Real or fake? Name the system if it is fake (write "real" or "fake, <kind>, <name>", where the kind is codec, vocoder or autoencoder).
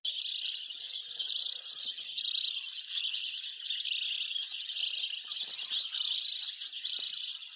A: real